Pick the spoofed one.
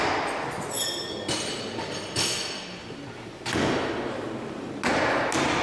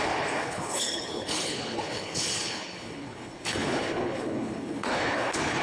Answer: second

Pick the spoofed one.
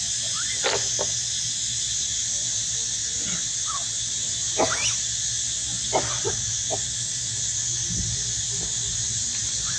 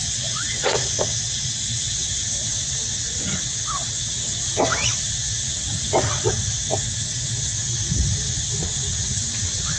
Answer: second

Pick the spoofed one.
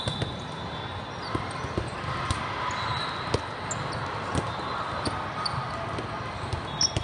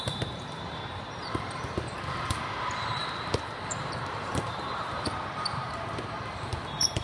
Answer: second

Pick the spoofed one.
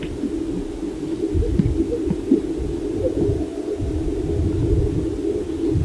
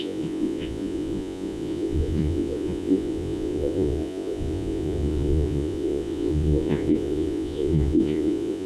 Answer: second